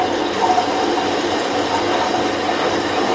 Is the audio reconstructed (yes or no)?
no